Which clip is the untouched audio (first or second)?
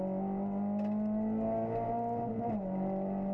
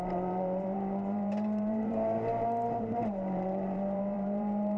first